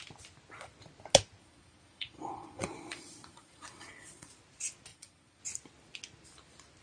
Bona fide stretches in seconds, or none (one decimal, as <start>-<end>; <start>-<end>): 0.0-1.4; 4.3-4.9; 5.4-6.8